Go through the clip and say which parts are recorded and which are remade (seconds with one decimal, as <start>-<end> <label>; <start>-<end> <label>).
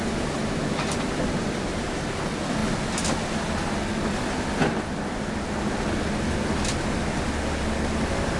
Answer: 0.0-0.4 recorded; 0.4-1.8 remade; 1.8-8.4 recorded